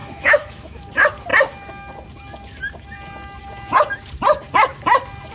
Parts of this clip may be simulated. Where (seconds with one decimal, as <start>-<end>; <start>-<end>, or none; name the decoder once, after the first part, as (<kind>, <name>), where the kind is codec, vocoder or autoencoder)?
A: 0.0-0.8 (autoencoder, DAC-VAE)